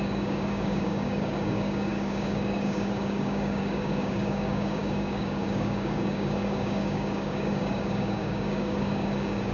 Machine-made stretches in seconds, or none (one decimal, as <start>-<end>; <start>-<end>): 0.0-9.5